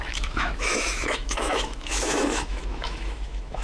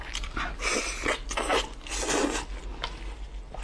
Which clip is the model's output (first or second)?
first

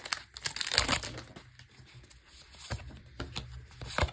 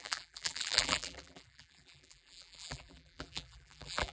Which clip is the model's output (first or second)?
second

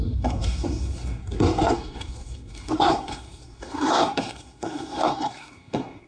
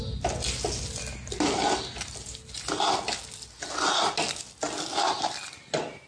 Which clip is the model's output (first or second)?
first